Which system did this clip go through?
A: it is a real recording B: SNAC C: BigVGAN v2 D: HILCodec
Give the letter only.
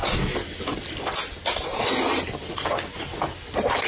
A